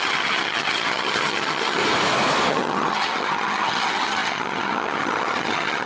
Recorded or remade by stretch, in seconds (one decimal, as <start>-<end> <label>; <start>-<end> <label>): 0.0-1.8 remade; 1.8-2.5 recorded; 2.5-5.9 remade